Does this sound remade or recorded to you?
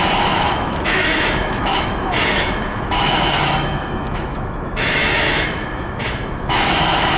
remade